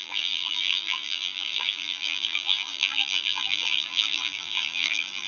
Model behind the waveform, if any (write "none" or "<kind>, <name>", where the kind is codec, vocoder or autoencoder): vocoder, BigVGAN v2